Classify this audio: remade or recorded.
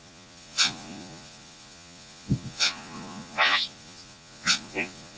remade